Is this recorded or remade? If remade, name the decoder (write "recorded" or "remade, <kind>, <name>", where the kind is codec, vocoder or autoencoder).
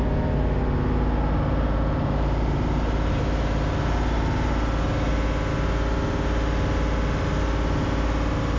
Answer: recorded